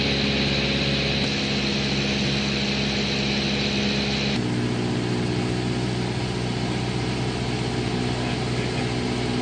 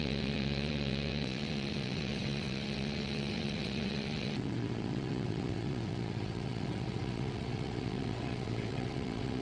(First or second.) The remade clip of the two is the second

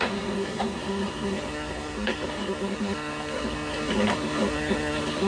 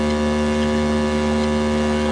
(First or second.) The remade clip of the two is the first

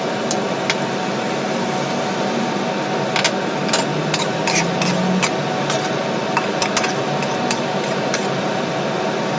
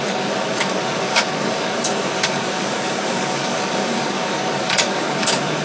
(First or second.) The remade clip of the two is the second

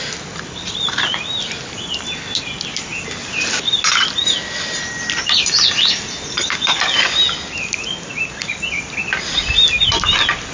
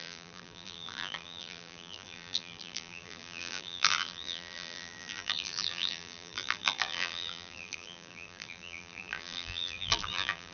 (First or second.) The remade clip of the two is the second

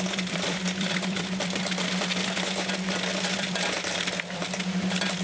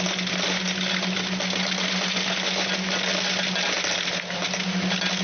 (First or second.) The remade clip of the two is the first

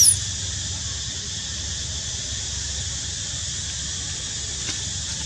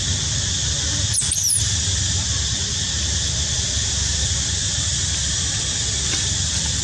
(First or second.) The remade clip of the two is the second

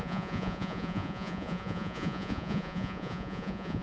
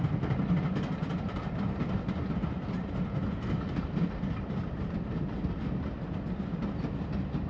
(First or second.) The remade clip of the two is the first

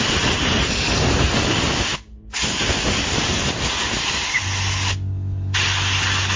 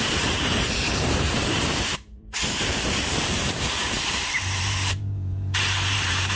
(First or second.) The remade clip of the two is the second